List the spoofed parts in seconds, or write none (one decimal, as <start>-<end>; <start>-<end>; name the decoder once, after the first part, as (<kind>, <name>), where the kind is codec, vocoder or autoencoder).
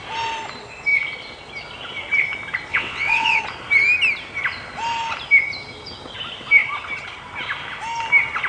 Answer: 2.7-3.4 (vocoder, WaveNeXt)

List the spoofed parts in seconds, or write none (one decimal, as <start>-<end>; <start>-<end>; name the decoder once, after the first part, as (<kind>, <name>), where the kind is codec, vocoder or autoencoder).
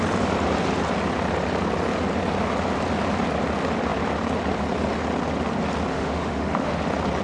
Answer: 5.9-6.8 (autoencoder, DAC-VAE)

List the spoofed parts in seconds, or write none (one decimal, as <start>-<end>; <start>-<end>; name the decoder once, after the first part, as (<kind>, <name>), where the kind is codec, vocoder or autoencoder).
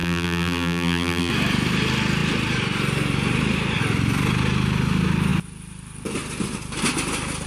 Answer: 0.0-1.3 (vocoder, BigVGAN v2)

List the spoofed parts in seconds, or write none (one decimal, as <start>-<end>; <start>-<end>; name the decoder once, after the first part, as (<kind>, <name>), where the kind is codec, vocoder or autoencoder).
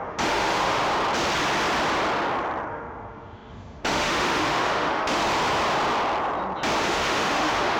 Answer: 0.0-0.8 (autoencoder, DAC-VAE); 2.7-5.2; 6.8-7.8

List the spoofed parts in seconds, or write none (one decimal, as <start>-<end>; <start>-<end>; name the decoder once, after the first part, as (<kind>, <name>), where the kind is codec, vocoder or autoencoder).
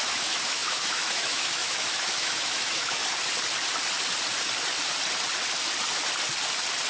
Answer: 0.0-3.0 (autoencoder, DAC-VAE)